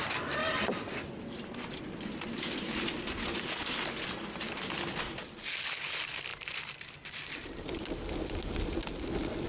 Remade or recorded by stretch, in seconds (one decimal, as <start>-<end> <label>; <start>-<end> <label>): 0.0-9.5 recorded